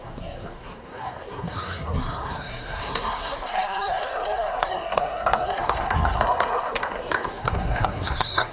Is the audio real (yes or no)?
no